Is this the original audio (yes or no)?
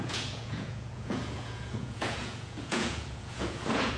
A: no